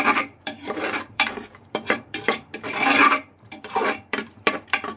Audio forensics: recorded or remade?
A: remade